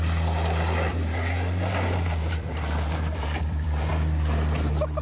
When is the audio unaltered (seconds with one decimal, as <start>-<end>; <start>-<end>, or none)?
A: 0.0-0.9; 3.9-5.0

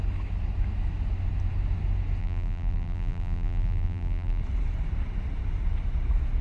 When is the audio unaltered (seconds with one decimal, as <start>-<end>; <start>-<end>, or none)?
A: 0.0-2.2; 4.4-6.4